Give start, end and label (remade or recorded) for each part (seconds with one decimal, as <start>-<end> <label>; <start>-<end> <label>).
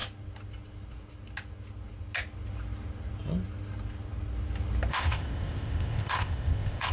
0.0-4.9 recorded; 4.9-6.9 remade